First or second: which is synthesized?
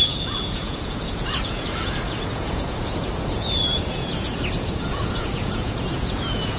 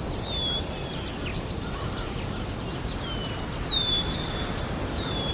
first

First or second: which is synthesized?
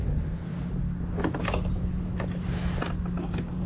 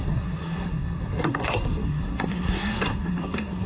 second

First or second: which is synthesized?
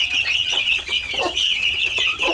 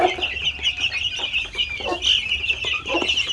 first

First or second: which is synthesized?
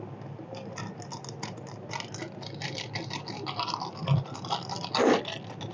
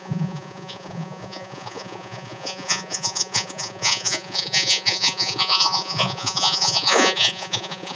second